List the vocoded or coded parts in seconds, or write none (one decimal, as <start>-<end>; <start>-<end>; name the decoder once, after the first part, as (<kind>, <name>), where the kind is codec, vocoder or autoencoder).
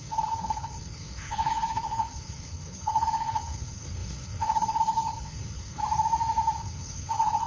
0.0-5.8 (codec, HILCodec); 6.6-7.5